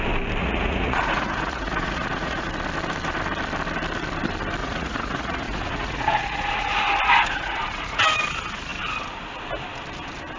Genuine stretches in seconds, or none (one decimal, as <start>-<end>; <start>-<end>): 0.0-0.4; 2.5-4.6; 8.0-10.4